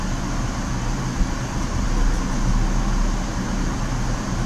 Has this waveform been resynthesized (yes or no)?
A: no